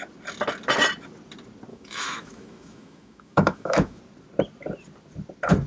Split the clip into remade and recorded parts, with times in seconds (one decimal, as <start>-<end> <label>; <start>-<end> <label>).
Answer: 0.0-1.7 recorded; 1.7-4.0 remade; 4.0-5.7 recorded